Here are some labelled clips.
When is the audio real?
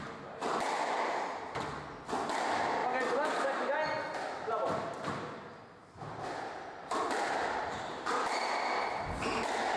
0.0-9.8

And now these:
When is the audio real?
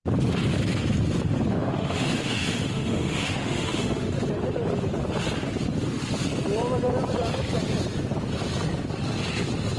0.0-1.5; 4.1-9.8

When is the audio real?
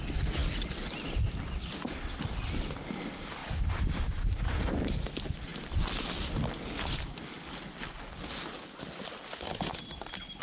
0.0-3.4; 4.8-10.4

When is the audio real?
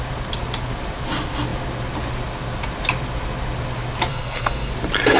0.0-4.1; 4.7-5.2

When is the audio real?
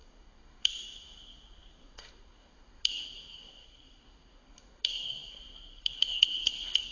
none